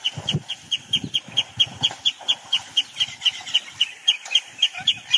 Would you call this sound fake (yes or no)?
no